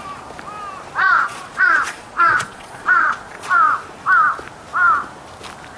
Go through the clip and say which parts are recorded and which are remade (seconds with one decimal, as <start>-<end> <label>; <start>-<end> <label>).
0.0-1.0 recorded; 1.0-3.5 remade; 3.5-5.8 recorded